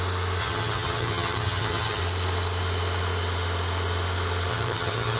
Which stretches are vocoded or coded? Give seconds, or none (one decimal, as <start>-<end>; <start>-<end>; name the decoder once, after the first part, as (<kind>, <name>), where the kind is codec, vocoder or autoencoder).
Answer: 0.4-2.0 (vocoder, HiFi-GAN); 4.5-5.2